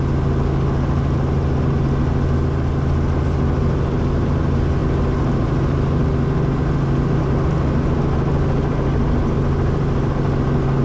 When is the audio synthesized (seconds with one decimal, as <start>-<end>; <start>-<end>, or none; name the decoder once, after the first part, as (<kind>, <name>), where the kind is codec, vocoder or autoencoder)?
none